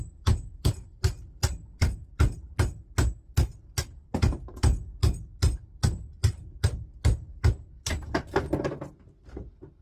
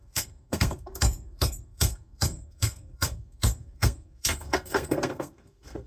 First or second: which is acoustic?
first